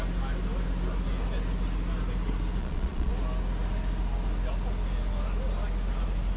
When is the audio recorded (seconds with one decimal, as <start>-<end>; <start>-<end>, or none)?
0.0-2.6; 3.1-6.4